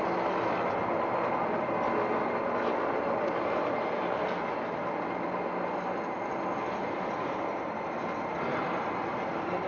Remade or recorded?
recorded